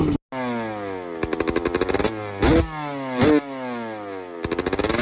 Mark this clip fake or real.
real